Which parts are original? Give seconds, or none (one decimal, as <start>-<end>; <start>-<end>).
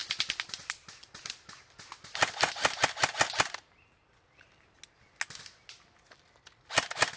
0.0-7.2